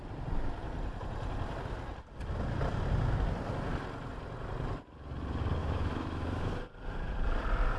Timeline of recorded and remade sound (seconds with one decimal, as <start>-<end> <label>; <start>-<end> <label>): 0.0-5.6 recorded; 5.6-6.5 remade; 6.5-7.8 recorded